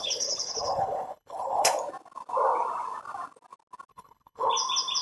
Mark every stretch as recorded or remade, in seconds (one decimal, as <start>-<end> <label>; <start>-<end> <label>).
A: 0.0-1.7 remade; 1.7-3.9 recorded; 3.9-4.5 remade; 4.5-5.0 recorded